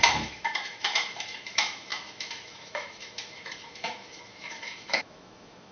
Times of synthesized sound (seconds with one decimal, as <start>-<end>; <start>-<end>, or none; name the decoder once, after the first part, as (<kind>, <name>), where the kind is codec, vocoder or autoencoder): 0.0-5.7 (autoencoder, DAC-VAE)